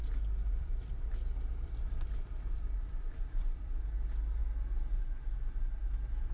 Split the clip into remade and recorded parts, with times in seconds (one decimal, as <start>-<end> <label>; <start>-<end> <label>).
0.0-3.8 remade; 3.8-6.3 recorded